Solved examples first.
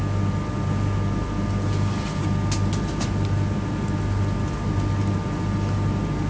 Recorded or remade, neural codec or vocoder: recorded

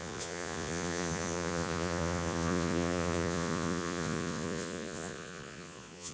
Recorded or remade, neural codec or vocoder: remade, vocoder, Vocos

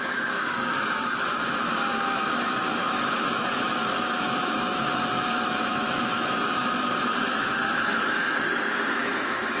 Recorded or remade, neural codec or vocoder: remade, autoencoder, DAC-VAE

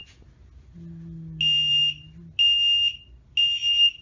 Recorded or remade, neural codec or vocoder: recorded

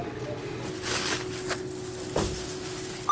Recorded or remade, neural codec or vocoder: recorded